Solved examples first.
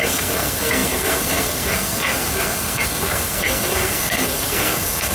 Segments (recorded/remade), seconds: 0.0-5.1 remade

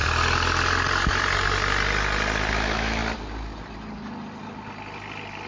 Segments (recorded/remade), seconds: 0.0-2.5 recorded; 2.5-3.0 remade; 3.0-5.5 recorded